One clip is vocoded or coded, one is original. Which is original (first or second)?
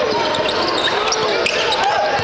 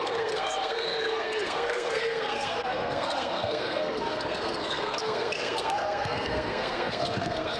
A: first